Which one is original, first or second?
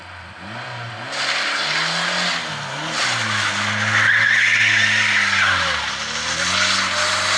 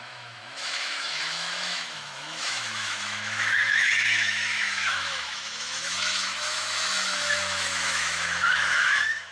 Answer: first